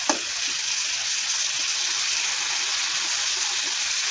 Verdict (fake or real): real